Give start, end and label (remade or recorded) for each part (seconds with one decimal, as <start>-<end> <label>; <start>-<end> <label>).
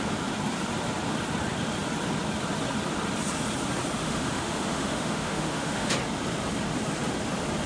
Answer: 0.0-4.0 recorded; 4.0-5.9 remade; 5.9-7.7 recorded